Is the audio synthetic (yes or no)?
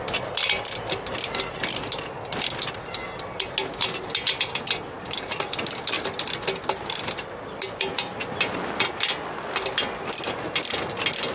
no